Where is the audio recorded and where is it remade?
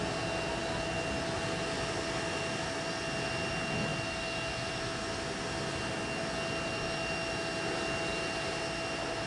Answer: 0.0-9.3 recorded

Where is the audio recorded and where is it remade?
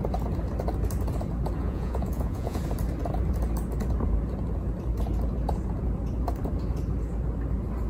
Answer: 0.0-1.6 recorded; 1.6-2.6 remade; 2.6-7.9 recorded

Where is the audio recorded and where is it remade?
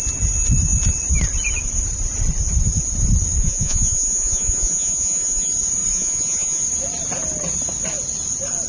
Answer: 0.0-3.4 recorded; 3.4-5.5 remade; 5.5-5.9 recorded; 5.9-6.6 remade; 6.6-8.7 recorded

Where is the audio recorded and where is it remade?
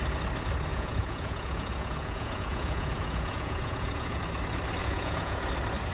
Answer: 0.0-0.7 recorded; 0.7-4.2 remade; 4.2-4.8 recorded; 4.8-5.4 remade; 5.4-5.9 recorded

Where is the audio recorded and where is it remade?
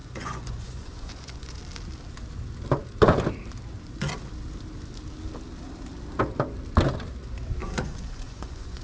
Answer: 0.0-1.6 remade; 1.6-7.6 recorded; 7.6-8.8 remade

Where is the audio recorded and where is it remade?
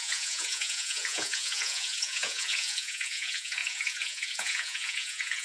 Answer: 0.0-5.4 remade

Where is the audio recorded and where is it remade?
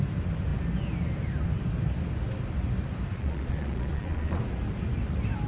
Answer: 0.0-3.1 recorded; 3.1-4.4 remade; 4.4-5.5 recorded